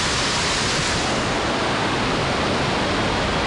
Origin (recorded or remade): recorded